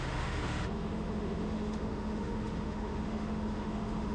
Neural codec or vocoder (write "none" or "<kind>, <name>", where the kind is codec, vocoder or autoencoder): autoencoder, DAC-VAE